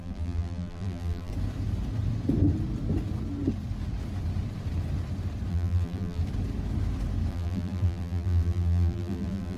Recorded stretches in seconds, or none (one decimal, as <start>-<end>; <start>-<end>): 1.3-5.5; 6.2-7.3